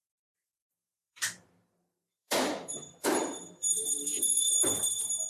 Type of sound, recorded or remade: remade